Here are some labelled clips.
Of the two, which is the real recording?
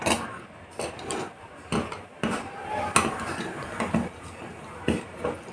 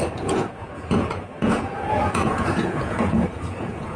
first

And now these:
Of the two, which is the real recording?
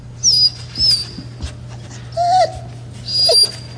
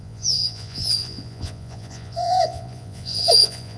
first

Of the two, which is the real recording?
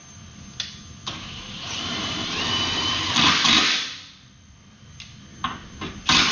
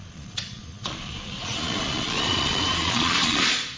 first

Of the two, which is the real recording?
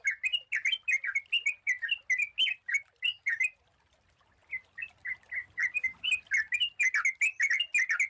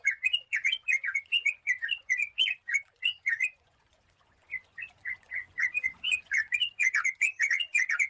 first